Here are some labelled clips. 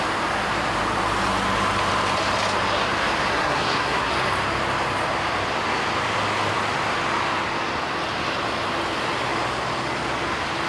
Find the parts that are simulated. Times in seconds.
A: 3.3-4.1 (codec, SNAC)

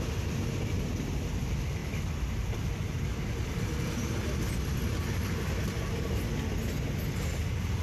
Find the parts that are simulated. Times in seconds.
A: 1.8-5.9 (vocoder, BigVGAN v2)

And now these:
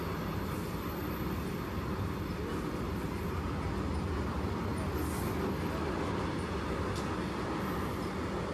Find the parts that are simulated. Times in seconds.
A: none

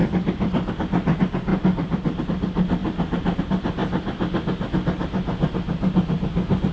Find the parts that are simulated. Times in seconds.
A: none

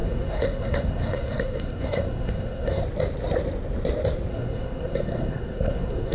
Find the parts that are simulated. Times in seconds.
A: 0.0-2.8 (codec, SNAC); 4.3-6.1